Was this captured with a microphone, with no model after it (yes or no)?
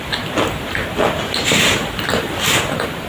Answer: yes